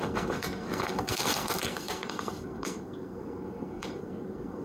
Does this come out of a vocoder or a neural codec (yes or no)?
yes